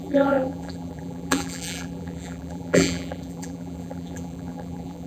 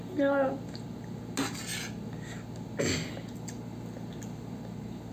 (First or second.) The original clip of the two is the second